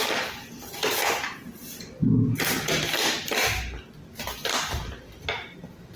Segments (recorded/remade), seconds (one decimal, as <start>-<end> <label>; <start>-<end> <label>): 0.0-6.0 recorded